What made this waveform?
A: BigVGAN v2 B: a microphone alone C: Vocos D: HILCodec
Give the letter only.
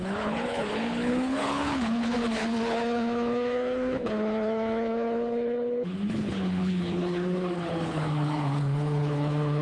D